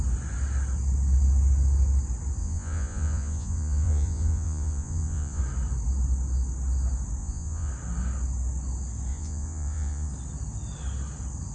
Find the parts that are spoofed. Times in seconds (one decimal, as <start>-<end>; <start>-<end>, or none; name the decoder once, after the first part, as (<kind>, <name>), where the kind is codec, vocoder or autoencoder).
2.4-5.4 (vocoder, Vocos); 7.2-7.7; 9.1-10.1